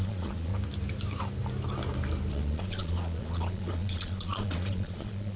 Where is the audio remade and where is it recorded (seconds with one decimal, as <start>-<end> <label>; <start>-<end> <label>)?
0.0-0.5 remade; 0.5-2.3 recorded; 2.3-5.4 remade